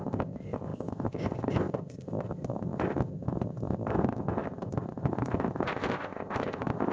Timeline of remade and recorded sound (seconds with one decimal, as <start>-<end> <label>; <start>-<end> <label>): 0.0-6.9 remade